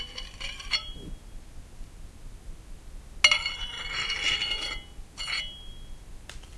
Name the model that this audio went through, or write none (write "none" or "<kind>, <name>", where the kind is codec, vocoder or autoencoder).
none